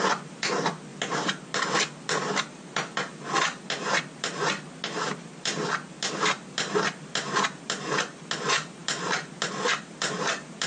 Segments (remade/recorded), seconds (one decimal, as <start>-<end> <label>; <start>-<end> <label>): 0.0-10.7 recorded